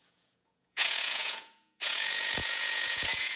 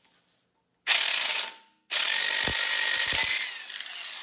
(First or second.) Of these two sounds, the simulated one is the first